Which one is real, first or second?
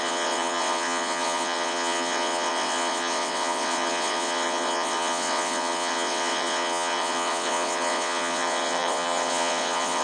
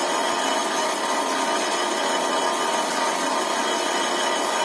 second